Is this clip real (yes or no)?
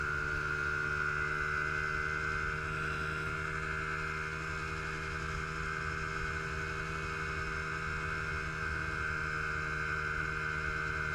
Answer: yes